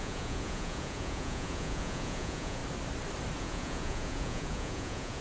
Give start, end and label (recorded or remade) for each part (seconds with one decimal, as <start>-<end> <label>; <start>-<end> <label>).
0.0-2.6 remade; 2.6-3.4 recorded; 3.4-5.2 remade